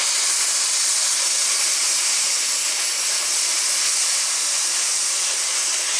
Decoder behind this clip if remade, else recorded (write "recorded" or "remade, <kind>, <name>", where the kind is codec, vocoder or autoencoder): recorded